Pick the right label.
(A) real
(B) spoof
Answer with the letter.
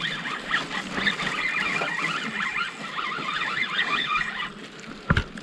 A